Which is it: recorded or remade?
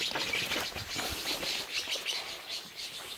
recorded